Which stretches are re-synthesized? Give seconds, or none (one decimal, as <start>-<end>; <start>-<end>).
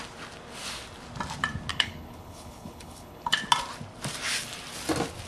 1.7-3.3